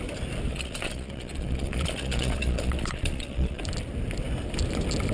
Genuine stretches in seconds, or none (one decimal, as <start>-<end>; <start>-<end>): 0.0-0.5; 3.6-5.1